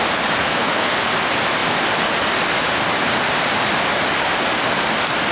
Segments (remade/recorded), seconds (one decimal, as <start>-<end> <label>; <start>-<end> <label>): 0.0-0.4 recorded; 0.4-1.1 remade; 1.1-5.3 recorded